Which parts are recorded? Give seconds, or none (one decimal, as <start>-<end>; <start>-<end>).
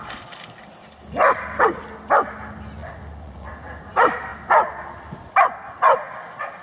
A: 0.0-2.8; 3.5-6.6